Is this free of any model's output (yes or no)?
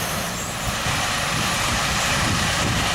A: yes